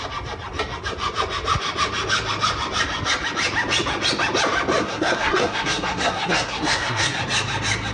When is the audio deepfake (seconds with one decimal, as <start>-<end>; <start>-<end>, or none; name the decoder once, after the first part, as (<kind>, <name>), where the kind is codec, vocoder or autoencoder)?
4.8-7.2 (codec, SNAC)

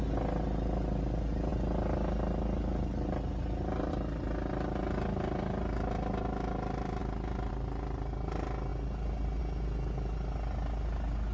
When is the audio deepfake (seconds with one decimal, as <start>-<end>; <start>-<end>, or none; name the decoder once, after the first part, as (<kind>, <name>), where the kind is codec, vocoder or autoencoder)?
none

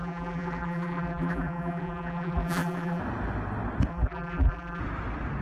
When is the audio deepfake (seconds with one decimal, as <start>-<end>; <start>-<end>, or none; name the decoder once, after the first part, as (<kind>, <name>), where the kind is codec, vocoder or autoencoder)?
0.0-3.0 (vocoder, BigVGAN v2); 3.9-4.8

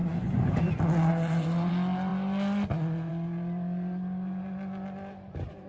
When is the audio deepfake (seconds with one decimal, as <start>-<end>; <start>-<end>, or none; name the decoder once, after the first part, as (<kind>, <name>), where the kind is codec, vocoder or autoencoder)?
0.0-0.6 (vocoder, Vocos); 1.1-1.7